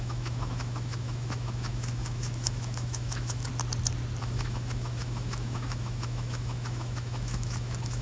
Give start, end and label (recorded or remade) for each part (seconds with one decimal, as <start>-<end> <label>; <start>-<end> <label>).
0.0-3.5 remade; 3.5-4.2 recorded; 4.2-8.0 remade